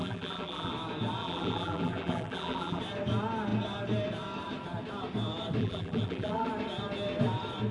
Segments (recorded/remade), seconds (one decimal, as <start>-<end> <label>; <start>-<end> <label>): 0.0-0.7 remade; 0.7-1.2 recorded; 1.2-2.8 remade; 2.8-5.6 recorded; 5.6-6.5 remade; 6.5-7.7 recorded